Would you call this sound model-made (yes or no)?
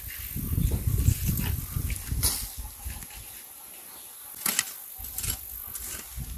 no